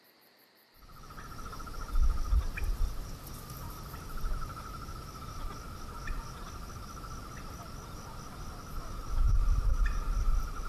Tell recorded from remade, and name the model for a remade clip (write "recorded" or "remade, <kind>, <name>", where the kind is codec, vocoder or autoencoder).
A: recorded